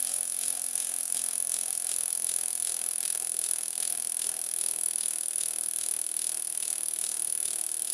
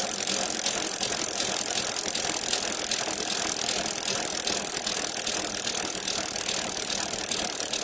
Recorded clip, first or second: second